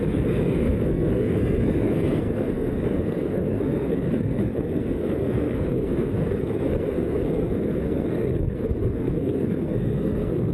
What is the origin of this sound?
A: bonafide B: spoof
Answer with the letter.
B